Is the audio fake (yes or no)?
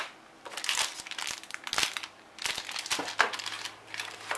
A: no